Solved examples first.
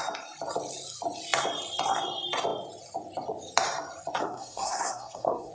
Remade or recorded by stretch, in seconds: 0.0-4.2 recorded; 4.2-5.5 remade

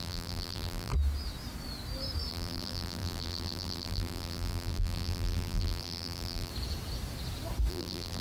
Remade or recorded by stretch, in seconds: 0.0-0.9 remade; 0.9-2.3 recorded; 2.3-6.5 remade; 6.5-7.7 recorded; 7.7-8.2 remade

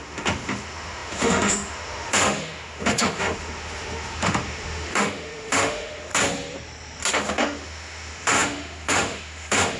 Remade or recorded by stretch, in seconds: 0.0-6.1 remade; 6.1-7.1 recorded; 7.1-9.8 remade

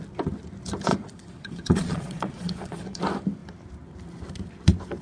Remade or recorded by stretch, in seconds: 0.0-0.9 recorded; 0.9-3.0 remade; 3.0-5.0 recorded

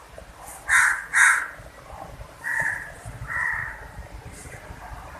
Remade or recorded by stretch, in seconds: 0.0-5.2 remade

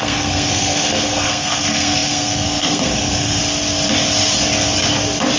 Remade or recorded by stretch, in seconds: 0.0-3.4 remade; 3.4-5.4 recorded